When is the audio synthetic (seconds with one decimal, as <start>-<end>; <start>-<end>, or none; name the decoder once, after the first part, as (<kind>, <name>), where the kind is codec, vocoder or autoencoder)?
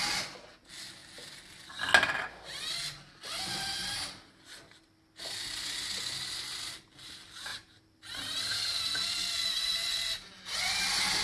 7.5-8.6 (vocoder, BigVGAN v2)